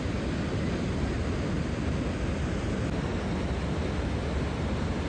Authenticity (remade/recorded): recorded